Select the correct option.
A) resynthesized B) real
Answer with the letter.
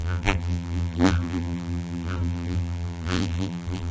A